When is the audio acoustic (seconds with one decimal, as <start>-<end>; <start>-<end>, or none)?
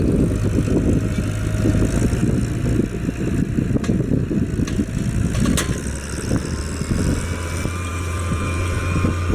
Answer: 0.0-7.9; 8.8-9.3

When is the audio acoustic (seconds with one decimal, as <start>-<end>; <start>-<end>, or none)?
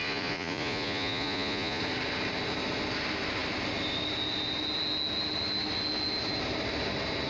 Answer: 1.8-7.3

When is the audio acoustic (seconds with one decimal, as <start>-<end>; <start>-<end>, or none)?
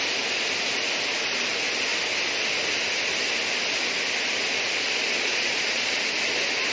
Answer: 0.0-5.3; 5.9-6.7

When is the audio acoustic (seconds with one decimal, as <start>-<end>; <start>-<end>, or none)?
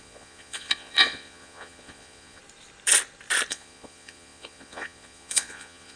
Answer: 2.4-3.5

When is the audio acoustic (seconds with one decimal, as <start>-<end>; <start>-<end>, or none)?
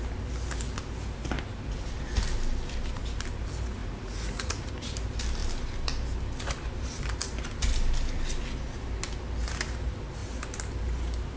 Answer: 0.0-3.8; 4.7-11.4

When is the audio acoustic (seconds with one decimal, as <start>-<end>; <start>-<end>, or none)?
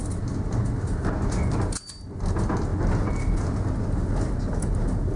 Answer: 0.0-5.2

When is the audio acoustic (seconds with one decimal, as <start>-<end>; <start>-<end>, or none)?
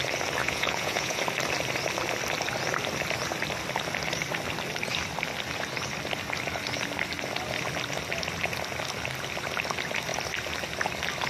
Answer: 0.0-0.4; 1.2-11.3